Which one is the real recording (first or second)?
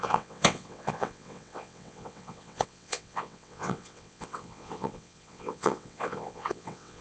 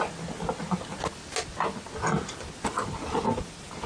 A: second